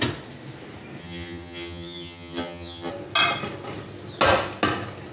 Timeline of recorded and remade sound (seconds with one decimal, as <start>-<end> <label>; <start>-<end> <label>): 0.0-1.0 recorded; 1.0-2.9 remade; 2.9-5.1 recorded